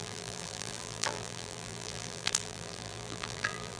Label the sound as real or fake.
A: fake